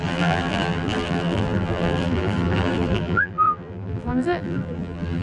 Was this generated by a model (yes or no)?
yes